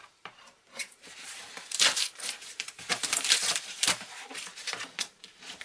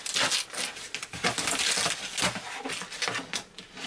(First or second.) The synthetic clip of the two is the first